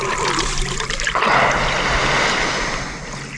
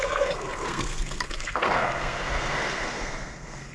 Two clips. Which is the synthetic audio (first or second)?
second